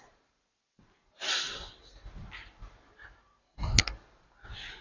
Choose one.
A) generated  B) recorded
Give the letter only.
B